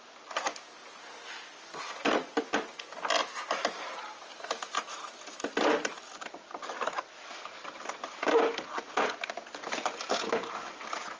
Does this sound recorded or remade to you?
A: recorded